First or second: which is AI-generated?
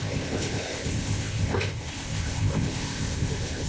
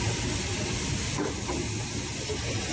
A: first